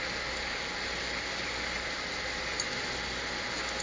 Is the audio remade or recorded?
recorded